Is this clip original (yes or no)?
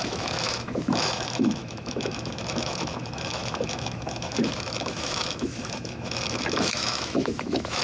no